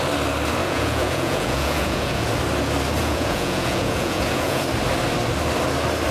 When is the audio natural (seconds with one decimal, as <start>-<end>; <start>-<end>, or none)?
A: 0.0-0.6; 2.3-3.0; 4.6-6.1